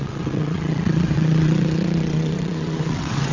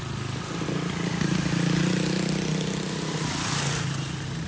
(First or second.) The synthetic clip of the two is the first